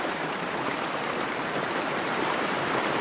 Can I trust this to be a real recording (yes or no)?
no